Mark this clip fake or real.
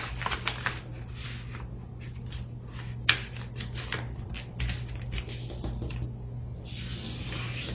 real